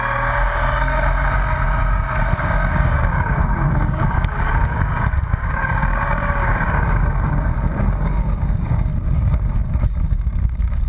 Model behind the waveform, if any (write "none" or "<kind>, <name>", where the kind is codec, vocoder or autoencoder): codec, DAC